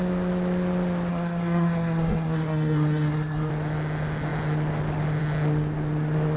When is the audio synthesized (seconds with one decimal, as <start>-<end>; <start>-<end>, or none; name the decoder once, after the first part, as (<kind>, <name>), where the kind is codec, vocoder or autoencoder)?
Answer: 1.1-3.5 (codec, SNAC)